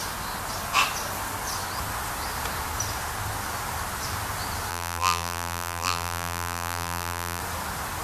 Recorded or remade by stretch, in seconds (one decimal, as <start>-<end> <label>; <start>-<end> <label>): 0.0-4.7 recorded; 4.7-7.4 remade; 7.4-8.0 recorded